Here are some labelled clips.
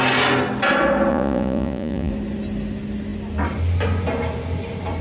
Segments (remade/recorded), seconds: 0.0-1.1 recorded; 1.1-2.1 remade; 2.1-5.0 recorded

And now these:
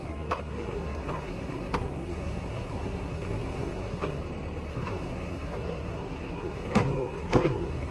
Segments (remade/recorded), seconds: 0.0-4.2 remade; 4.2-4.7 recorded; 4.7-7.9 remade

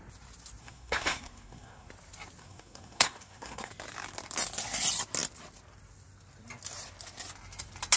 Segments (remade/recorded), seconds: 0.0-0.6 recorded; 0.6-1.9 remade; 1.9-2.4 recorded; 2.4-3.7 remade; 3.7-8.0 recorded

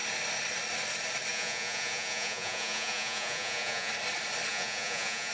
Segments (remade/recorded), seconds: 0.0-1.3 recorded; 1.3-3.9 remade; 3.9-4.5 recorded; 4.5-5.3 remade

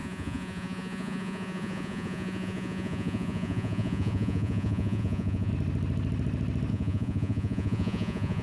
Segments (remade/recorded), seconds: 0.0-5.5 remade; 5.5-6.7 recorded; 6.7-8.4 remade

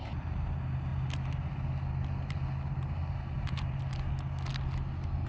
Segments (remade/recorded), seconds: 0.0-5.3 recorded

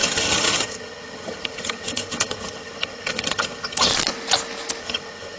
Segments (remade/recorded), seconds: 0.0-3.9 remade; 3.9-4.8 recorded; 4.8-5.4 remade

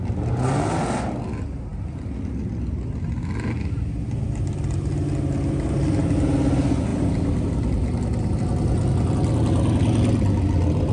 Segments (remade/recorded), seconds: 0.0-10.9 recorded